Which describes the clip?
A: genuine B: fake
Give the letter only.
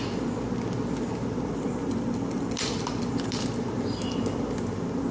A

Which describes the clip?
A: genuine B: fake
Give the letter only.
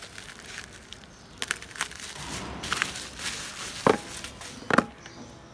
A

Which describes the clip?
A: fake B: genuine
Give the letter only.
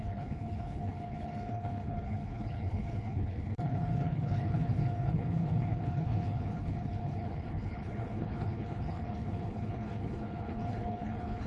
A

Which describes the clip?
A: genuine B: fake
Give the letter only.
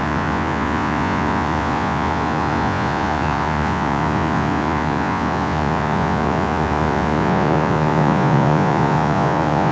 B